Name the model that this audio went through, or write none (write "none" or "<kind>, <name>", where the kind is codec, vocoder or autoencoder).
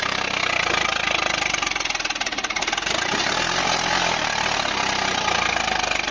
none